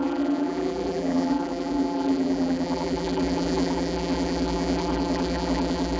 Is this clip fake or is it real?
fake